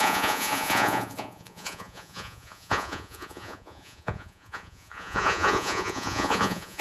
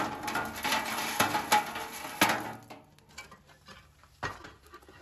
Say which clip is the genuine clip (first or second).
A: second